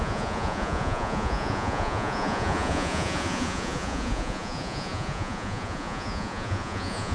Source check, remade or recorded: remade